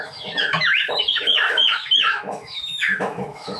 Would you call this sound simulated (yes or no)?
yes